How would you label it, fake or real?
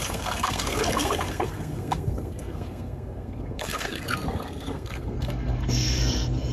fake